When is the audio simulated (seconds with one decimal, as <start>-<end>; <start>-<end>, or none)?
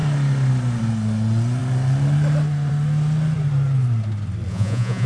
4.5-5.1